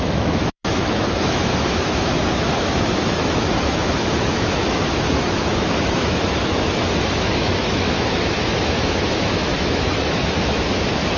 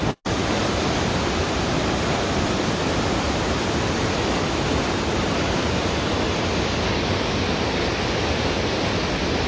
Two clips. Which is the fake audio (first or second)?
first